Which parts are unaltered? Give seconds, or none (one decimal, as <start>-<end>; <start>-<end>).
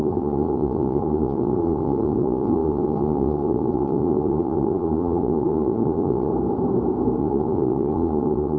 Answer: 6.3-7.2